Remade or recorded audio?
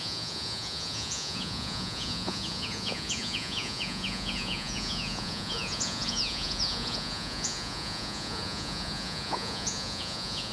remade